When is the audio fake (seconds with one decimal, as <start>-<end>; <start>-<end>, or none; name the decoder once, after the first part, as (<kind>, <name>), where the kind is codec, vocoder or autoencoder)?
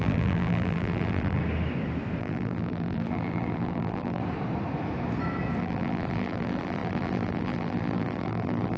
0.0-1.4 (vocoder, BigVGAN v2); 2.2-4.2; 5.6-8.8